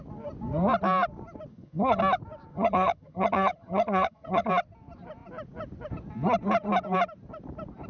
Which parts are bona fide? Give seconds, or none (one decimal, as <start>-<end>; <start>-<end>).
0.0-1.5; 2.0-2.5; 4.5-7.9